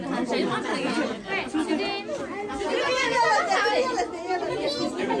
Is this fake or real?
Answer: real